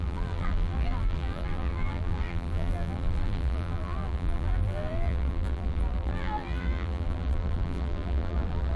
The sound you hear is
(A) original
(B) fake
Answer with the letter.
B